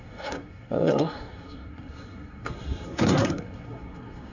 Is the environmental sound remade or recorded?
remade